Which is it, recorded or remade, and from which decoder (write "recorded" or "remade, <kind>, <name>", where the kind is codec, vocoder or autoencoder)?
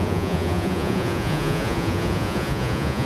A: remade, vocoder, Vocos